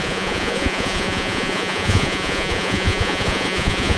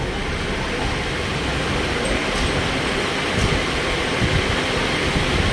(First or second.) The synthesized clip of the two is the first